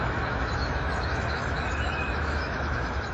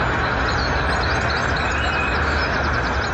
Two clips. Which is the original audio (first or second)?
second